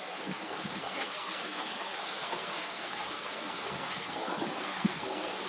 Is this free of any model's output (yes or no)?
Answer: no